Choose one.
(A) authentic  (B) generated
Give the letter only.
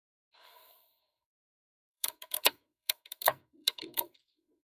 B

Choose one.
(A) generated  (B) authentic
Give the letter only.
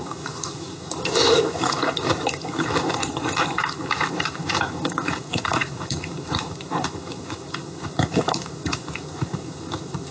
A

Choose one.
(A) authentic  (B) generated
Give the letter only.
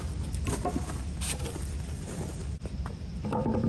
A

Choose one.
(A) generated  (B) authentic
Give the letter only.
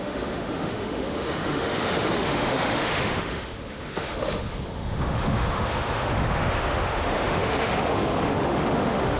A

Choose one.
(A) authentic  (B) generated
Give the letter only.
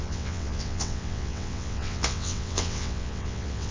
B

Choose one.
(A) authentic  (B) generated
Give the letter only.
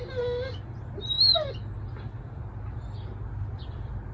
A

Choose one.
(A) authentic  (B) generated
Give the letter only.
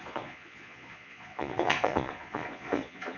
B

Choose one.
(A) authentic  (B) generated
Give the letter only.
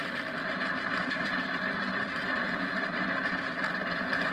B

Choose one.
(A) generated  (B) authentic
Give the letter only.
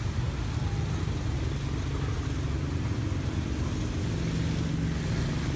B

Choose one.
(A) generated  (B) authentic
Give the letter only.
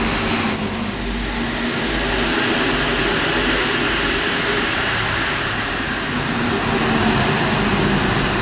B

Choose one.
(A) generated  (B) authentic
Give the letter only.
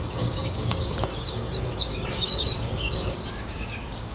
A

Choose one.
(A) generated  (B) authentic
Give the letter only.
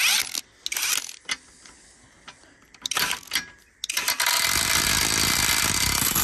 B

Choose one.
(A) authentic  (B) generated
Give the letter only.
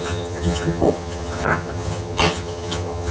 B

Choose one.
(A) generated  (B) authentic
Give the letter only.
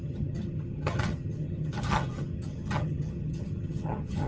A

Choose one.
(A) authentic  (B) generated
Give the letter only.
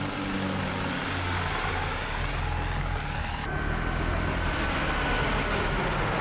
A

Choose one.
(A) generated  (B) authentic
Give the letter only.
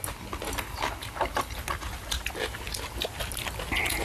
B